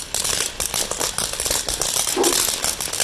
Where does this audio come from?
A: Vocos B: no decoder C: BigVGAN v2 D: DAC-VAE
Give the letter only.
B